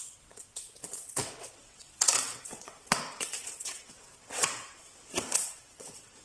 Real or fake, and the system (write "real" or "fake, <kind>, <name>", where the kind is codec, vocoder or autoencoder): fake, vocoder, WaveNeXt